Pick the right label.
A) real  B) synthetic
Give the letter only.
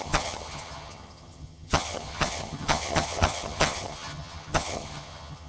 B